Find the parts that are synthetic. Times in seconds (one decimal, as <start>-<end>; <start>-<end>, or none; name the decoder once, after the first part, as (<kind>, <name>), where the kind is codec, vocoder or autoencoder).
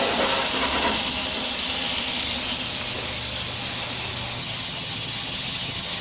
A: 4.4-6.0 (vocoder, HiFi-GAN)